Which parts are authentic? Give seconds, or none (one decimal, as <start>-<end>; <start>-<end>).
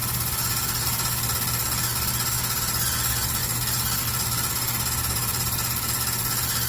0.0-6.7